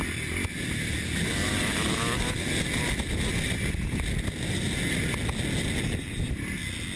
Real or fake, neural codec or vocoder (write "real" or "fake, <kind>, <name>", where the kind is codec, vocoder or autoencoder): real